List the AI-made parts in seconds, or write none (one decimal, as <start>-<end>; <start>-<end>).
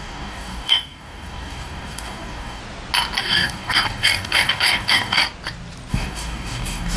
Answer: 0.0-2.6; 3.2-5.2; 5.9-7.0